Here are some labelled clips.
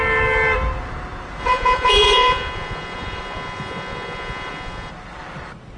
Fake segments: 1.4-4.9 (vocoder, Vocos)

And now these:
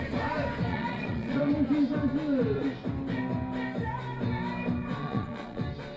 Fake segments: 0.7-1.5 (vocoder, Vocos); 5.0-5.6

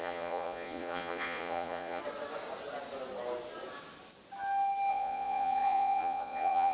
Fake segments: 0.0-2.0 (vocoder, Vocos); 4.9-6.7